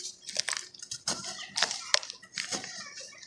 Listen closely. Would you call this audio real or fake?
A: real